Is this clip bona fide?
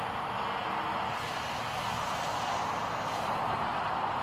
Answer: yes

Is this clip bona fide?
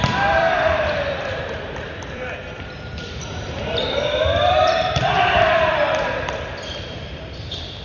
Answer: no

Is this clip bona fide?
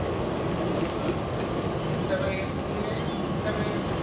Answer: yes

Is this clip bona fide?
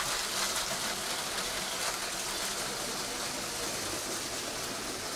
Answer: yes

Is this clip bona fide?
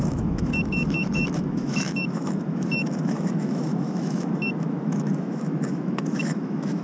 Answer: no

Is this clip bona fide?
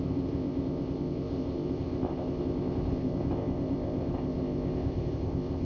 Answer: no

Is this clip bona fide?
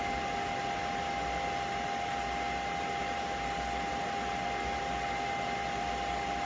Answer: yes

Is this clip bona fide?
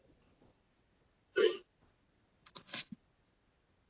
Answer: yes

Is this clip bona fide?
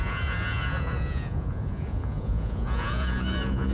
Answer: no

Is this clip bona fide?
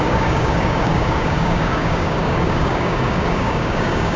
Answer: no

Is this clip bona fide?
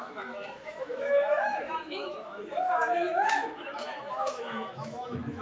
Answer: no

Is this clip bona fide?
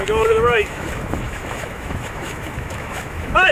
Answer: no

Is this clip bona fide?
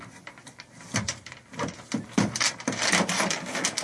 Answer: yes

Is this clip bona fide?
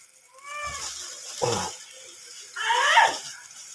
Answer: yes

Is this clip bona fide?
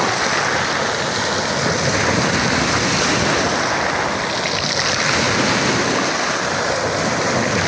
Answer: yes